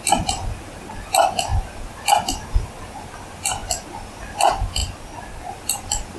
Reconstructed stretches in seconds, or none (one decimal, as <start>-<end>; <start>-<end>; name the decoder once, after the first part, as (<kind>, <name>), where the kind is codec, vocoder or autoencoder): none